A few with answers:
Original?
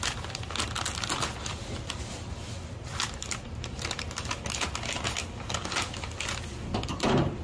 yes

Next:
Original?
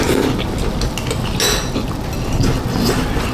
yes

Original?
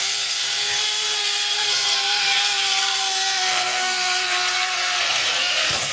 no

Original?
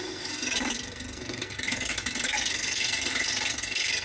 no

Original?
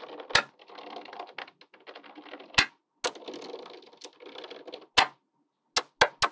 yes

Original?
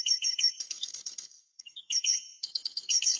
no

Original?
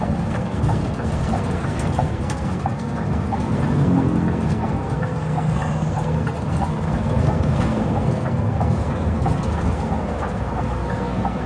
no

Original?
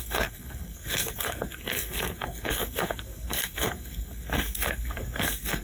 no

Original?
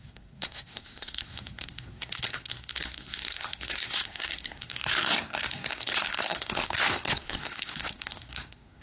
no